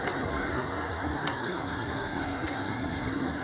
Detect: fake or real fake